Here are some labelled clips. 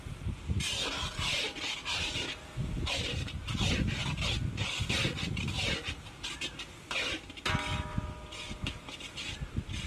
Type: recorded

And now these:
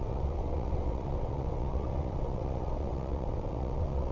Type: remade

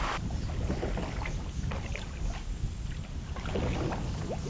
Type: recorded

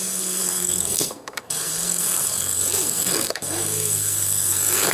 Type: remade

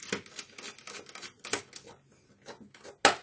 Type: recorded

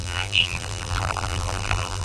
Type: remade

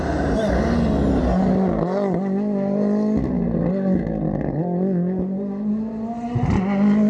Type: recorded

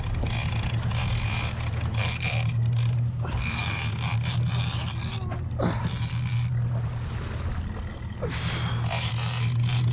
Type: recorded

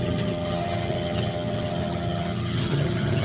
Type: remade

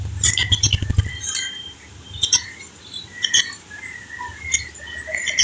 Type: recorded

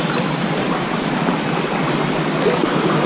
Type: remade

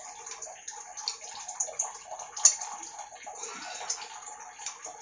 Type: recorded